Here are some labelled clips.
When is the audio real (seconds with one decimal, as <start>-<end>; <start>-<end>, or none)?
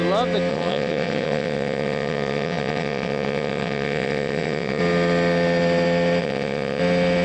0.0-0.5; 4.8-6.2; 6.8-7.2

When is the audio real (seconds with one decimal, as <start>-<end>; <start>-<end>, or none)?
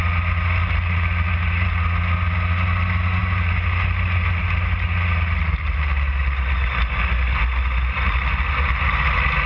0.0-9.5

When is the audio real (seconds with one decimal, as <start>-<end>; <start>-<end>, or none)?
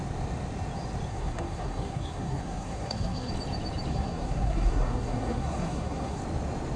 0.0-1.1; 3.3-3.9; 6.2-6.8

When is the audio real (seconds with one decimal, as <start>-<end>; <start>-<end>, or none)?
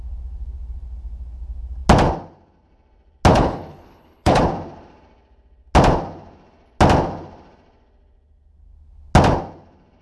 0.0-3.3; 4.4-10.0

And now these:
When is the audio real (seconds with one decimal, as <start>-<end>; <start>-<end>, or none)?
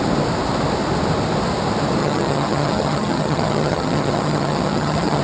0.0-2.0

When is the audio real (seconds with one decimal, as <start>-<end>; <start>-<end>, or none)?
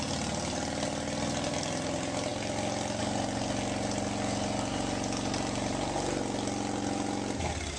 0.0-7.8